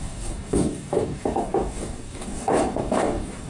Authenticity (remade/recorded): remade